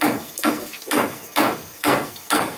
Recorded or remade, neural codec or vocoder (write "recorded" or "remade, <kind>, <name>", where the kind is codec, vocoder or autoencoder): remade, codec, SNAC